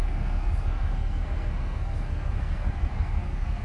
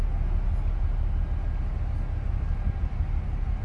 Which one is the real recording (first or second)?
second